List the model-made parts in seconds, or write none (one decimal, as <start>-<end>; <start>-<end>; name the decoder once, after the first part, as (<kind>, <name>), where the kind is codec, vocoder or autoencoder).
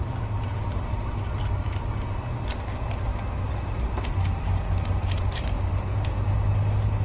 none